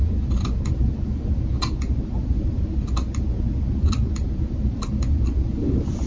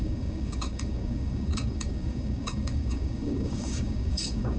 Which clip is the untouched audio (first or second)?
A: first